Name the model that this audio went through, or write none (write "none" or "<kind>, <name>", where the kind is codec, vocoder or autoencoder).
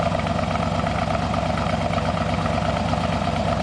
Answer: none